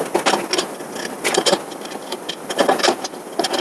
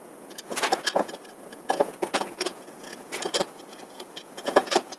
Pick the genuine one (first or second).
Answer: first